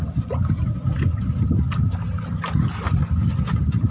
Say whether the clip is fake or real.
real